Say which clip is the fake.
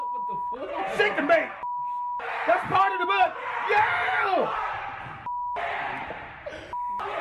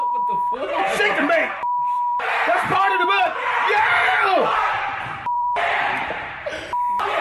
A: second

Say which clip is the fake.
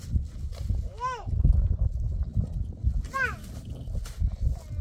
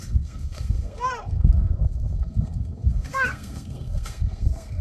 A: second